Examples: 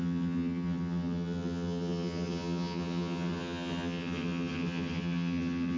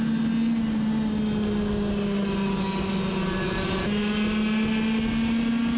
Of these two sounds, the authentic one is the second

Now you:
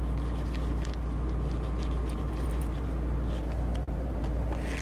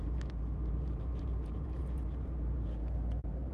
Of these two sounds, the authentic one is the first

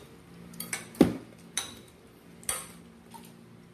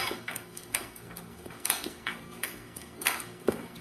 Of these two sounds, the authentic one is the first